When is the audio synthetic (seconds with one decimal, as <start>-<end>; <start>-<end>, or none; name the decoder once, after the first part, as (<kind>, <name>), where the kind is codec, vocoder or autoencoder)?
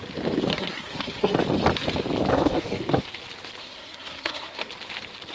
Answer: 0.5-1.4 (codec, SNAC); 2.3-3.0; 3.6-4.7